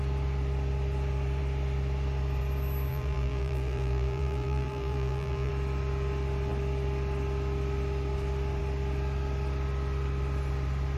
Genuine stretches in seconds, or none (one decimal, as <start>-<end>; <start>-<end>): 0.0-2.9; 5.5-11.0